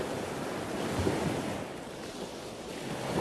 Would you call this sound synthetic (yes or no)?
no